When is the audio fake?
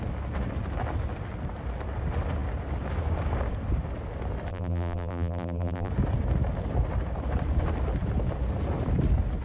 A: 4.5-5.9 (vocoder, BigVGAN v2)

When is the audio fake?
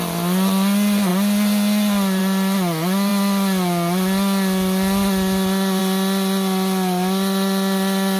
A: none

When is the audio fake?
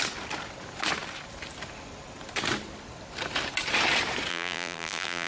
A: 4.3-5.3 (vocoder, BigVGAN v2)